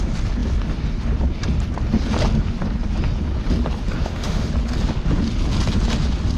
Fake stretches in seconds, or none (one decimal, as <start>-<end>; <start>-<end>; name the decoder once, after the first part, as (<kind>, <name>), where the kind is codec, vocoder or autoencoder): 4.0-4.5 (autoencoder, DAC-VAE)